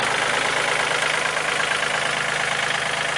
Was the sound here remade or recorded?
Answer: recorded